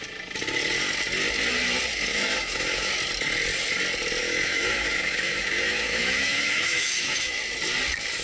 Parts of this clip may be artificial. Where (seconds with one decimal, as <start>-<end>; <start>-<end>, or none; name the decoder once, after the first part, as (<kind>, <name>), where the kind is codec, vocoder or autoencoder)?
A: 2.1-2.9 (autoencoder, DAC-VAE); 4.2-7.4